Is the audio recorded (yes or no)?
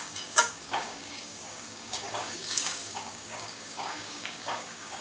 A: no